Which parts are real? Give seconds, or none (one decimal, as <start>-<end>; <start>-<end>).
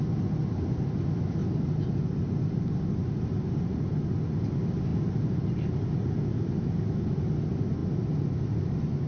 0.0-1.4; 2.0-9.1